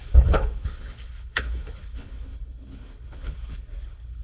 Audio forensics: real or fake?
fake